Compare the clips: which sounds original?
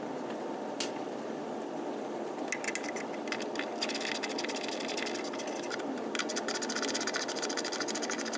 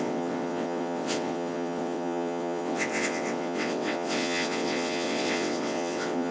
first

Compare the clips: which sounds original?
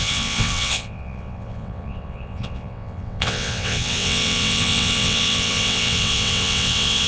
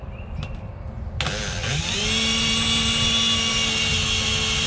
second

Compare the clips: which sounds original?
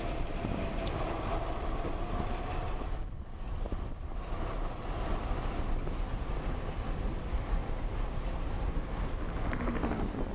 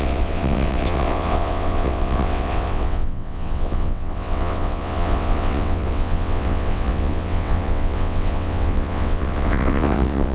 first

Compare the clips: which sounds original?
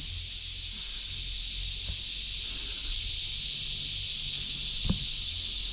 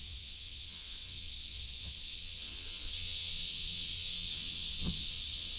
first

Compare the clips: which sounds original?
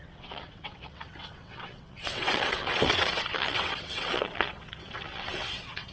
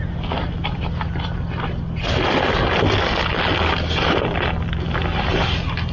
second